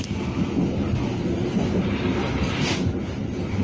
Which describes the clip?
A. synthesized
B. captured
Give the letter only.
B